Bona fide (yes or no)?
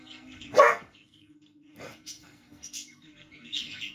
no